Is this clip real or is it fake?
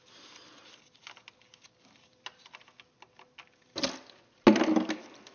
real